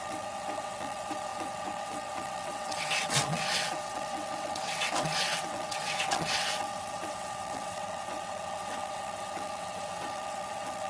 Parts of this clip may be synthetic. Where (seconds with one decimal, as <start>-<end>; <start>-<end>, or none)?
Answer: 0.0-10.9